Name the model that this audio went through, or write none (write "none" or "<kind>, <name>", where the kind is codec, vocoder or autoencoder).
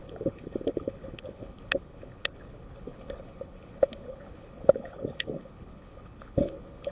codec, HILCodec